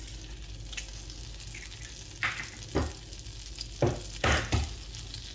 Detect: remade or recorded recorded